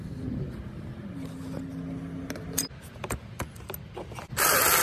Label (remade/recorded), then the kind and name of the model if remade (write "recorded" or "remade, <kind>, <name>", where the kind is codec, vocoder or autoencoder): recorded